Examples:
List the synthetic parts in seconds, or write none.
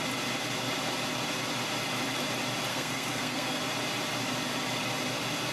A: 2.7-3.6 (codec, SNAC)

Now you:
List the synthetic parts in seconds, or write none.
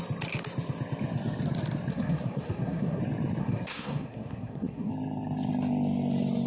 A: 1.9-3.0 (codec, SNAC); 3.4-4.9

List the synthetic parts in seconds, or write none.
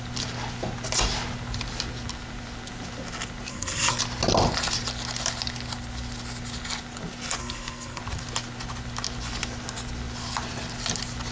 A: 3.5-4.0 (codec, SNAC); 7.4-8.0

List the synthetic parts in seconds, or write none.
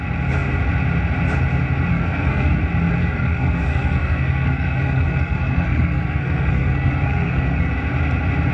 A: 1.9-2.6 (codec, SNAC); 3.0-7.7